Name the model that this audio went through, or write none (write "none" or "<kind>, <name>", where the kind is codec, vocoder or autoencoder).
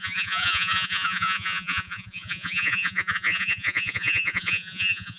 vocoder, Vocos